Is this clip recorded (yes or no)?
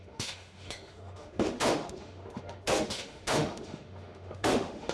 no